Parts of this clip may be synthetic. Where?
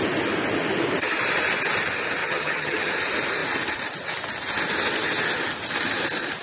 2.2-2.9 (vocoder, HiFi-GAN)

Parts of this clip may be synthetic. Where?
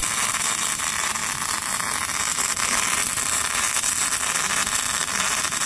0.0-1.2 (vocoder, BigVGAN v2); 2.2-5.7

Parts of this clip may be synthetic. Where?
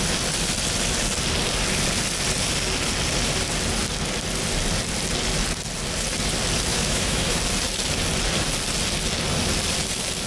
6.7-7.4 (autoencoder, DAC-VAE)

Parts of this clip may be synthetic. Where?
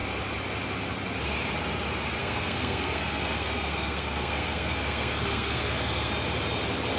2.2-6.1 (codec, SNAC)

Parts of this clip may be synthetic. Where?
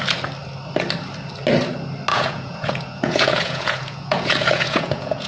2.1-5.3 (vocoder, Vocos)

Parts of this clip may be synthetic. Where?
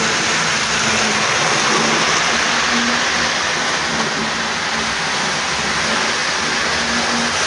none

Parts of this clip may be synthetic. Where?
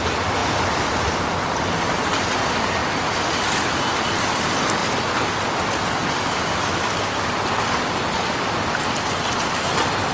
0.0-0.4 (vocoder, BigVGAN v2); 1.9-2.8; 3.9-4.8; 5.4-10.1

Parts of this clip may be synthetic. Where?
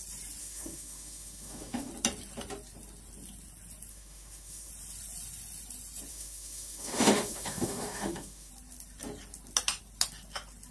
0.4-1.9 (autoencoder, DAC-VAE); 3.9-4.7; 6.1-8.5